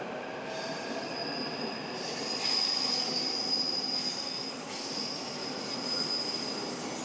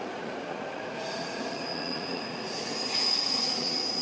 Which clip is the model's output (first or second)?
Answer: second